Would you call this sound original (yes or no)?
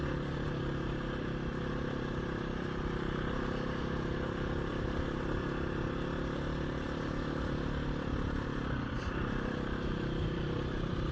no